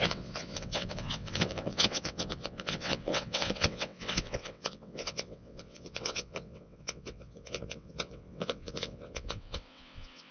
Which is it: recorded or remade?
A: remade